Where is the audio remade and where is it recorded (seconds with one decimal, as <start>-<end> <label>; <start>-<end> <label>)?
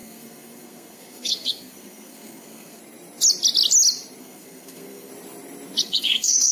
0.0-2.8 remade; 2.8-4.2 recorded; 4.2-5.1 remade; 5.1-5.8 recorded; 5.8-6.5 remade